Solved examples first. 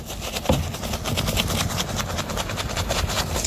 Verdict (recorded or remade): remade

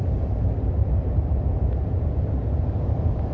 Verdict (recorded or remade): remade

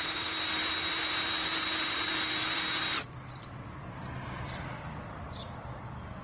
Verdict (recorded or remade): remade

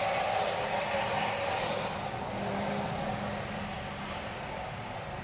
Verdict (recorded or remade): recorded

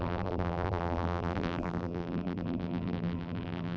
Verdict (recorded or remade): remade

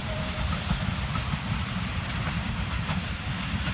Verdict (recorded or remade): remade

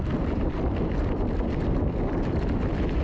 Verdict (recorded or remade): recorded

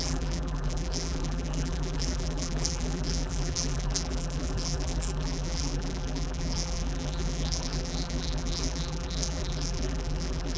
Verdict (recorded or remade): remade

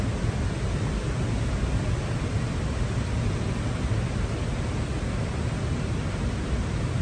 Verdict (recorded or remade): recorded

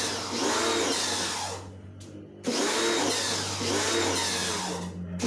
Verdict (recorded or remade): recorded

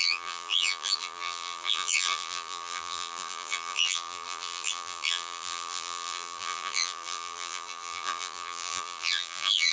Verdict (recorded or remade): remade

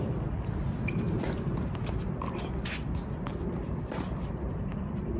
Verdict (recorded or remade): remade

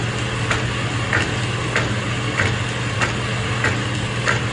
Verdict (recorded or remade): recorded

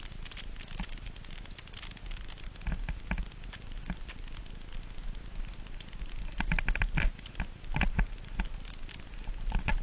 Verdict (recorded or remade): recorded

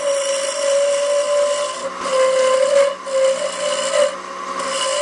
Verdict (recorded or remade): recorded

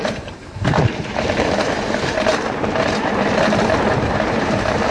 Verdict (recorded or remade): remade